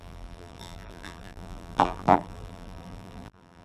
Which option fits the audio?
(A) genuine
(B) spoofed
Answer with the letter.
B